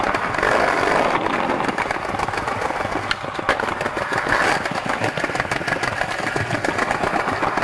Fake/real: real